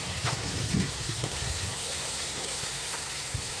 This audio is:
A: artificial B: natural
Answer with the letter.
A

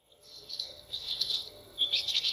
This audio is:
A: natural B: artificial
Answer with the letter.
B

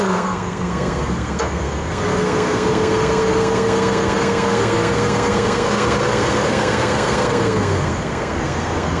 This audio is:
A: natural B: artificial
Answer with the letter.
B